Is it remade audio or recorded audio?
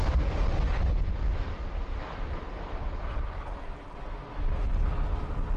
recorded